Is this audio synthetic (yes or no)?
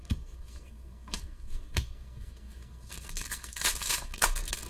yes